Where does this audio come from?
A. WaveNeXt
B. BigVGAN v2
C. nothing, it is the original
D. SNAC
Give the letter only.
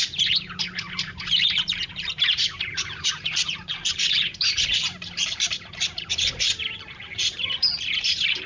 B